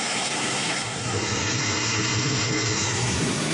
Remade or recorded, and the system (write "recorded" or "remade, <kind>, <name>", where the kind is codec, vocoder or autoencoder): remade, codec, SNAC